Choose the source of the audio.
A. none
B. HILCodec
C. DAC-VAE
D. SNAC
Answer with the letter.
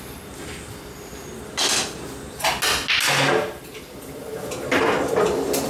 A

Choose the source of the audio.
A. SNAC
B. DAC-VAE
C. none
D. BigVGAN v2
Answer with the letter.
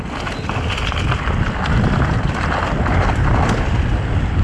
C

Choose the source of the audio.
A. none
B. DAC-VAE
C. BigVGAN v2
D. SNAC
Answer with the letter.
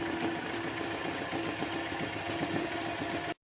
A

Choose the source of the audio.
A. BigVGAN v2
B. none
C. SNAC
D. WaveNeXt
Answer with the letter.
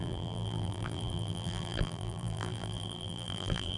A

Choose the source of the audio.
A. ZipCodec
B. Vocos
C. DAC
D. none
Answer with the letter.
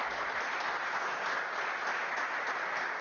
D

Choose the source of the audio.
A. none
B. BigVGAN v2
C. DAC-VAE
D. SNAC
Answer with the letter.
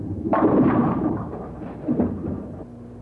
B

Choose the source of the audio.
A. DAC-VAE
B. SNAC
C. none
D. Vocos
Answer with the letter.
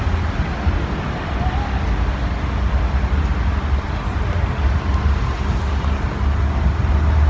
C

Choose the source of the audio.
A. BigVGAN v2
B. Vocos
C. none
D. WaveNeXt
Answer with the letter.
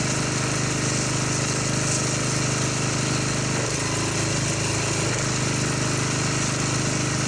C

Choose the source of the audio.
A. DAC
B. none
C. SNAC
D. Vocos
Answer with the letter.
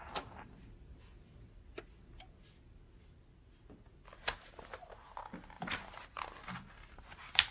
B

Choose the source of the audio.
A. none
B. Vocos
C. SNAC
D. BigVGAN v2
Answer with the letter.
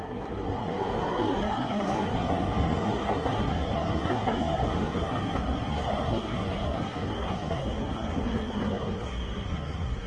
C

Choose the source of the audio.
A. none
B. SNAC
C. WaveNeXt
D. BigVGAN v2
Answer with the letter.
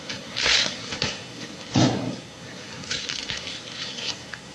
B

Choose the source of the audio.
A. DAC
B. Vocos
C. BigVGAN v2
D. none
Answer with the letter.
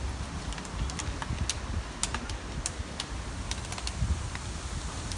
D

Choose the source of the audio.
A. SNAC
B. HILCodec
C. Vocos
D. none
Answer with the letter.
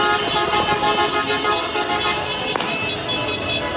D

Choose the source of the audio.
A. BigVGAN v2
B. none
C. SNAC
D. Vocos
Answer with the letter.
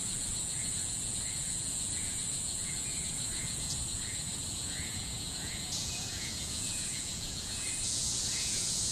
D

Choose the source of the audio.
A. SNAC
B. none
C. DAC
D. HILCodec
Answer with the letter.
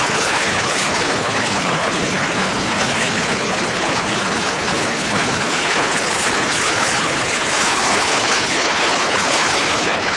D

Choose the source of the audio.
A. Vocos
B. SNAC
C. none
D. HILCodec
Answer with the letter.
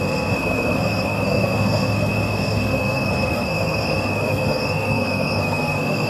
B